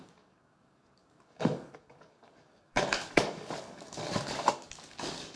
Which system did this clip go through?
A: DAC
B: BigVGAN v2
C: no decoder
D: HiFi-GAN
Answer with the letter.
A